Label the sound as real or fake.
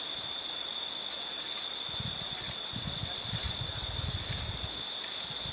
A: real